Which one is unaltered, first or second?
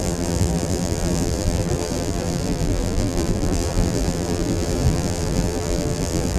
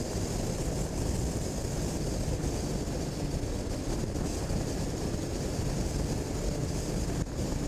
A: second